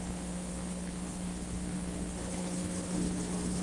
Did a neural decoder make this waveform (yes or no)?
yes